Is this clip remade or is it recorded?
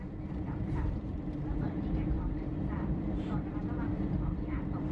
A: remade